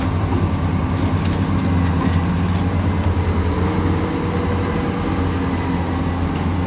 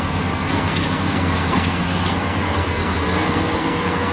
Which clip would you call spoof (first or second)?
second